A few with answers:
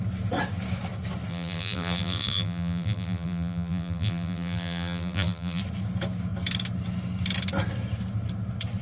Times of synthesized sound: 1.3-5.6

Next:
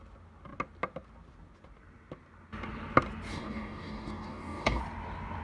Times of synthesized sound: 3.3-4.8

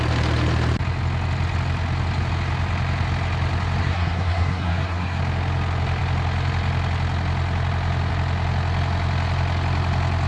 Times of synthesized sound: 3.8-5.2

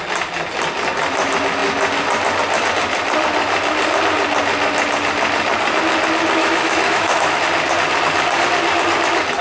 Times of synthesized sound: 6.4-7.4

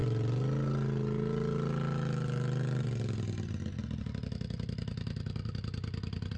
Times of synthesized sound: none

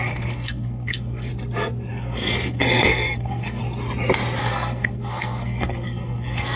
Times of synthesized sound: 0.0-1.3; 1.9-3.6; 4.4-6.6